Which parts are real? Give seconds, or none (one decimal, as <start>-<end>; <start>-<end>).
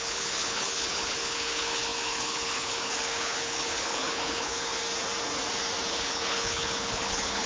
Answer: 4.8-5.9